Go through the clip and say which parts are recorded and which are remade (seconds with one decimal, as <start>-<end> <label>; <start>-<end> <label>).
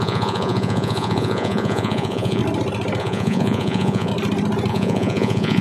0.0-2.4 remade; 2.4-3.0 recorded; 3.0-4.1 remade; 4.1-4.7 recorded; 4.7-5.6 remade